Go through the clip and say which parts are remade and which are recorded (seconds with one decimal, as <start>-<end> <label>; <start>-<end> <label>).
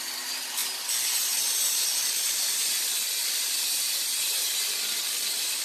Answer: 0.0-0.6 recorded; 0.6-1.3 remade; 1.3-1.9 recorded; 1.9-4.0 remade; 4.0-5.6 recorded